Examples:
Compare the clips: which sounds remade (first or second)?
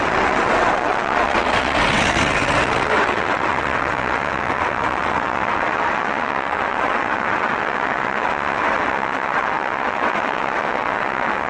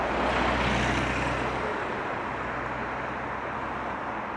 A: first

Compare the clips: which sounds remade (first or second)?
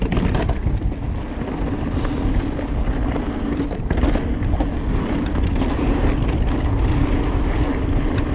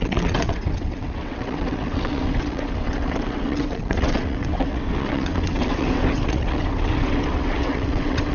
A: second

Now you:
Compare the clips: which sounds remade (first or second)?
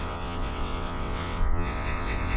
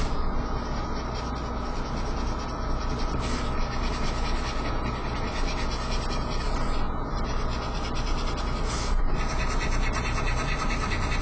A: first